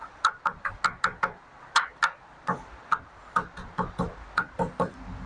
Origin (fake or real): real